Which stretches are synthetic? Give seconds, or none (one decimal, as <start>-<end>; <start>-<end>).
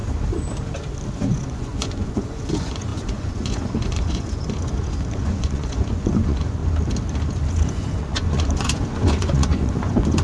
1.1-6.6; 7.5-10.2